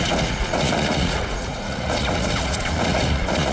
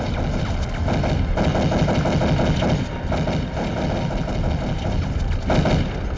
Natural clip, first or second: second